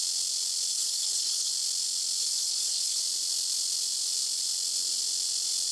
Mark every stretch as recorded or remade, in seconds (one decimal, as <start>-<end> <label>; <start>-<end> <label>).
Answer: 0.0-0.7 recorded; 0.7-1.5 remade; 1.5-2.2 recorded; 2.2-3.0 remade; 3.0-5.7 recorded